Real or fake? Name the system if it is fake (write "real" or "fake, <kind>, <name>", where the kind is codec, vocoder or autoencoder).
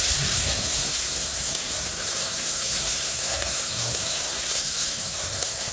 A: fake, codec, SNAC